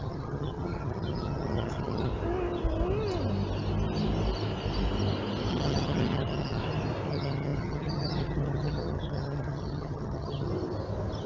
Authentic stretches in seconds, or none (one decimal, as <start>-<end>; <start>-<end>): 2.1-5.5; 6.6-7.1; 10.5-11.3